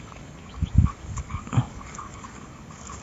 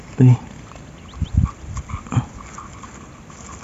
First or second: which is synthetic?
first